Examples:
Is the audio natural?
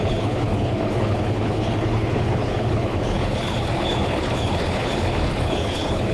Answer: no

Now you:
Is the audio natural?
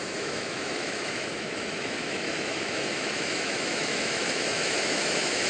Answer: no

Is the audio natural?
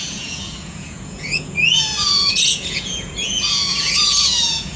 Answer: no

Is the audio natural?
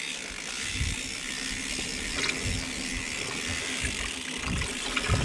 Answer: yes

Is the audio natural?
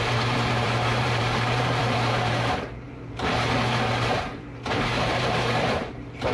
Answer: no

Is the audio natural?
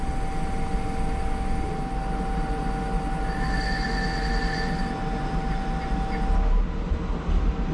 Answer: yes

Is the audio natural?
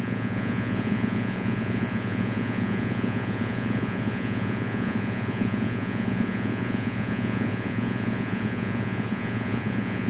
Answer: no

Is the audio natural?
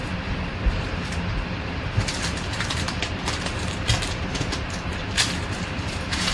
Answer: no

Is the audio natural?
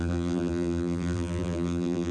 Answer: no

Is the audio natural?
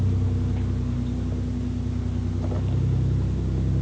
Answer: yes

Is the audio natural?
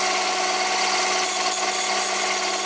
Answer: yes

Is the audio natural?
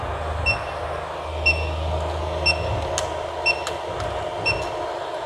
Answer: yes